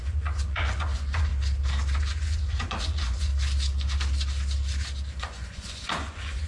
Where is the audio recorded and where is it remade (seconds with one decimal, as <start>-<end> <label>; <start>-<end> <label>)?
0.0-1.3 remade; 1.3-2.0 recorded; 2.0-3.3 remade; 3.3-5.2 recorded; 5.2-6.5 remade